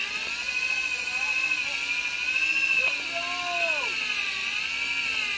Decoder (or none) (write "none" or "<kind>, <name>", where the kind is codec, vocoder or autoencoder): none